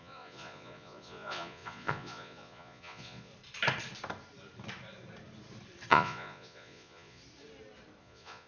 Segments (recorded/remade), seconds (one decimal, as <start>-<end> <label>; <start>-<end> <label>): 0.0-3.3 remade; 3.3-5.9 recorded; 5.9-7.2 remade; 7.2-8.0 recorded; 8.0-8.5 remade